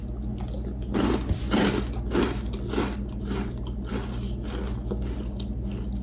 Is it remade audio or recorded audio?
recorded